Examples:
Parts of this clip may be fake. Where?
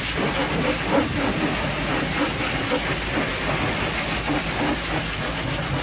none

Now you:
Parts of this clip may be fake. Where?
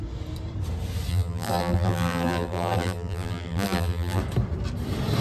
1.1-4.2 (vocoder, BigVGAN v2)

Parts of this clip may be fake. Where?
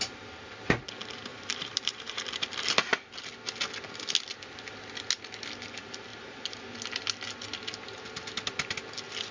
1.3-2.2 (vocoder, BigVGAN v2); 6.1-6.6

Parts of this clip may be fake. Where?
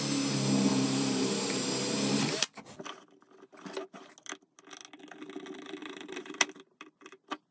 0.7-2.2 (vocoder, BigVGAN v2); 5.8-6.9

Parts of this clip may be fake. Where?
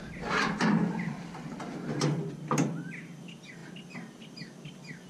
none